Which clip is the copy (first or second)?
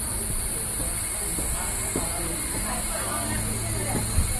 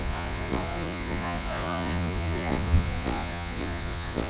second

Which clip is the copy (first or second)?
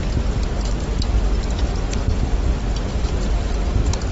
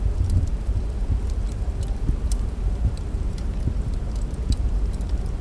second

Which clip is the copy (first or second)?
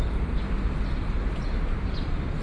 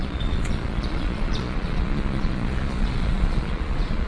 second